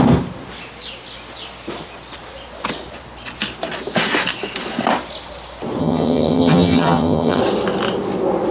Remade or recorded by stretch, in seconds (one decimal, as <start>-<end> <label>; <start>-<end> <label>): 0.0-5.8 recorded; 5.8-7.4 remade; 7.4-8.5 recorded